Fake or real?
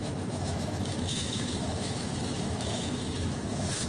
fake